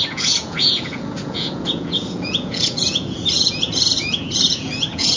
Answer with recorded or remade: remade